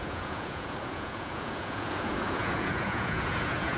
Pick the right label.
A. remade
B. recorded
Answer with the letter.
A